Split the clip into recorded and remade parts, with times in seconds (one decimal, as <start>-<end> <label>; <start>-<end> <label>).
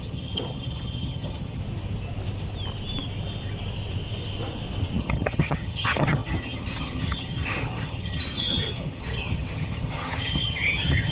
0.0-1.6 remade; 1.6-5.0 recorded; 5.0-11.1 remade